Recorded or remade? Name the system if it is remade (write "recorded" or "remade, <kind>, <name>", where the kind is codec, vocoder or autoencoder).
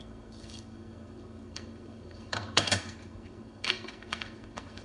remade, codec, SNAC